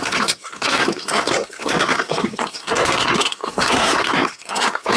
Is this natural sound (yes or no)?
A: no